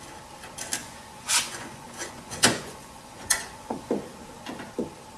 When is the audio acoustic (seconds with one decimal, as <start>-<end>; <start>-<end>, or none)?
0.0-0.8; 3.9-5.2